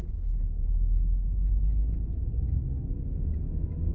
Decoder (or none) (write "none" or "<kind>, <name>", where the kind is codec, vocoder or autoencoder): none